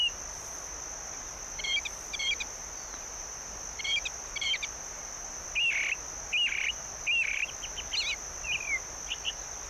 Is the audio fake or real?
real